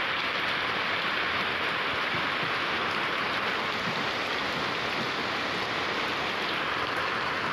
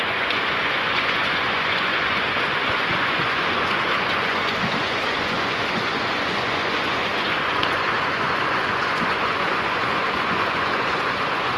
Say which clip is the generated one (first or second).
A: second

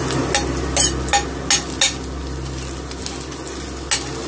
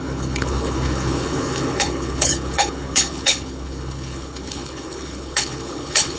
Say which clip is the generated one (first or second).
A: second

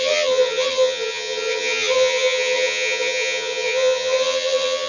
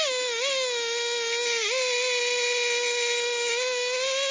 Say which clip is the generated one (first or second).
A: first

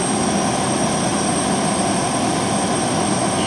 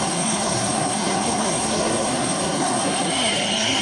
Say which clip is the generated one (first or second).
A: second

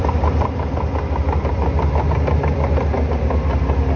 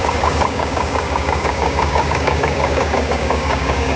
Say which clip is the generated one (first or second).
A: second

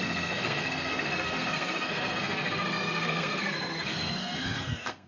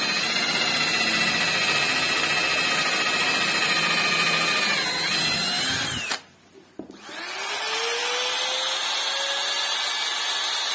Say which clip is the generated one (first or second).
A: first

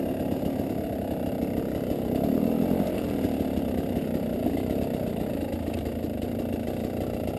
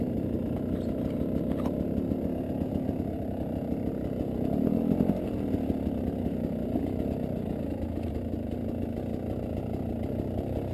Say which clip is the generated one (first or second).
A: first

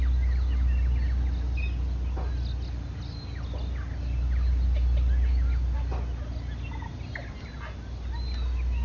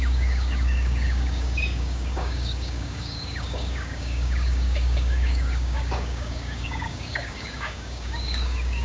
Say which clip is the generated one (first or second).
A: second